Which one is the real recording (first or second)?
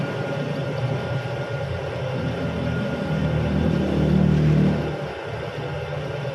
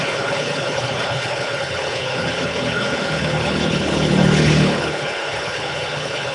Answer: first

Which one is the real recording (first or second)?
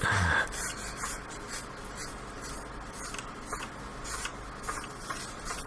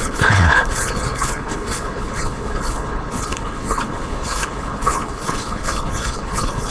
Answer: first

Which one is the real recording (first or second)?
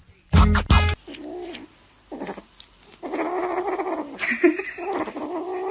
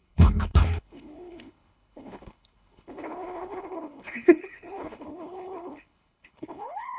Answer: first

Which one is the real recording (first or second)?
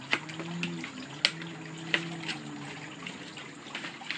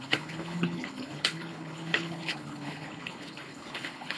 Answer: first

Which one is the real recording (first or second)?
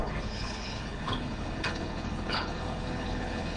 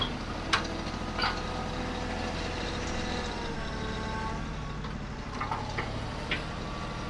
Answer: second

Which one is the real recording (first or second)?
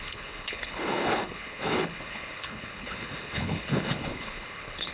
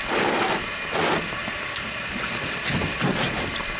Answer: second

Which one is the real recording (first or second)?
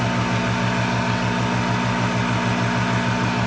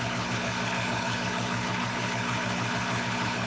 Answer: first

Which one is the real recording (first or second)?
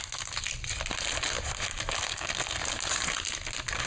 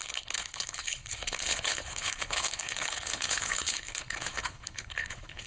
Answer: first